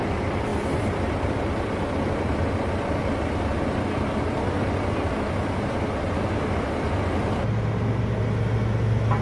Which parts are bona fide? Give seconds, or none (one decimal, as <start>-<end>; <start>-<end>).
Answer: 0.0-9.2